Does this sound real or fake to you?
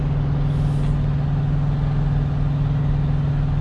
real